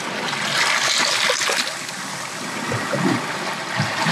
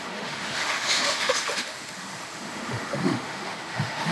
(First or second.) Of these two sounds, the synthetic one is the second